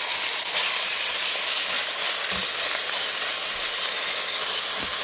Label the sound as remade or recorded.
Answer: recorded